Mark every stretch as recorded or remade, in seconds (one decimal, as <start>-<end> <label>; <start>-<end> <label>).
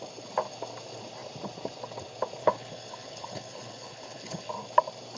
0.0-2.4 recorded; 2.4-4.5 remade; 4.5-5.2 recorded